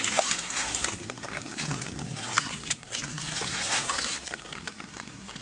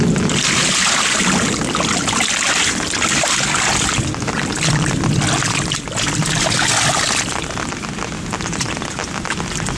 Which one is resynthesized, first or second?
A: first